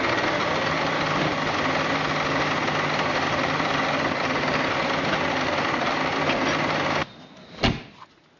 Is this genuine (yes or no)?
yes